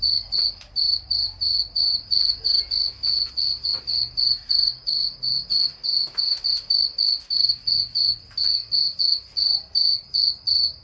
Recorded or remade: recorded